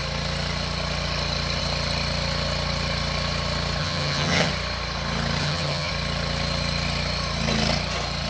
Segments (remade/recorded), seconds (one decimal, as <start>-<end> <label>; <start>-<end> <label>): 0.0-3.8 recorded; 3.8-4.5 remade; 4.5-5.4 recorded; 5.4-5.9 remade; 5.9-8.3 recorded